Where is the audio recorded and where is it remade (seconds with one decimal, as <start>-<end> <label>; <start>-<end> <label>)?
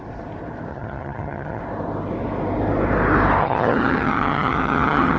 0.0-0.7 recorded; 0.7-1.6 remade; 1.6-3.4 recorded; 3.4-5.2 remade